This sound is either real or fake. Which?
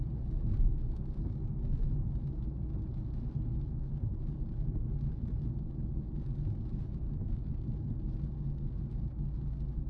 real